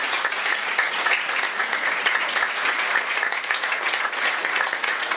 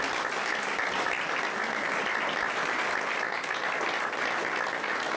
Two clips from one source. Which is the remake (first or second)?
first